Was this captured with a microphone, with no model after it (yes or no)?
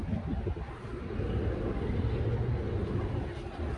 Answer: yes